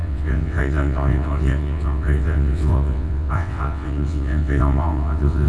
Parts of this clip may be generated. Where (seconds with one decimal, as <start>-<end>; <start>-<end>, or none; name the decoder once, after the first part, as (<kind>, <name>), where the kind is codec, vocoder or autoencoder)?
0.0-5.5 (vocoder, WaveNeXt)